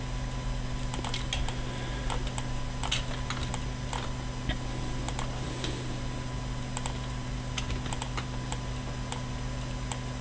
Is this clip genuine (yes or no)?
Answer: yes